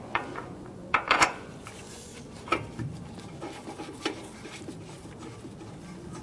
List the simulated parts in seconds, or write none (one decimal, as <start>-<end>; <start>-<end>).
0.0-2.1; 5.8-6.2